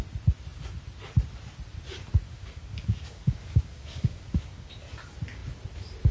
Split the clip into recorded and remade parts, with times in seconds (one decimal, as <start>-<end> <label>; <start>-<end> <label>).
0.0-2.4 recorded; 2.4-4.7 remade; 4.7-6.1 recorded